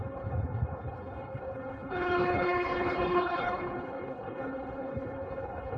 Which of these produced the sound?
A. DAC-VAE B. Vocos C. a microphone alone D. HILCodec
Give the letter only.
D